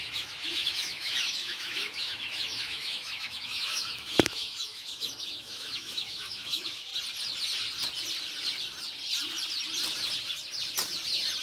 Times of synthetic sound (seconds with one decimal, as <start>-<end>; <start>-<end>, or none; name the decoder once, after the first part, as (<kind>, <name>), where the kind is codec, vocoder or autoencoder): 0.0-6.9 (autoencoder, DAC-VAE)